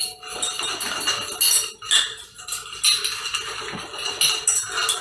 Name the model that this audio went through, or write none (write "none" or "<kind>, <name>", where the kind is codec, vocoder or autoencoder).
none